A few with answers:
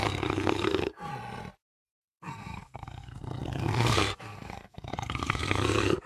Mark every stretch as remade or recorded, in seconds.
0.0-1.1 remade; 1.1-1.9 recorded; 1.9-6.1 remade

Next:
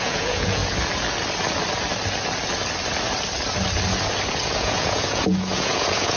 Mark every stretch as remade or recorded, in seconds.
0.0-0.6 remade; 0.6-4.3 recorded; 4.3-6.2 remade

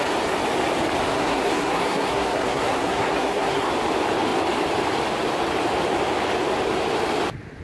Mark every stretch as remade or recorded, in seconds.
0.0-1.1 recorded; 1.1-3.7 remade; 3.7-7.6 recorded

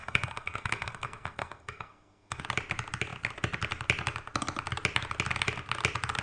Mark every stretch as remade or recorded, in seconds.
0.0-2.4 remade; 2.4-6.2 recorded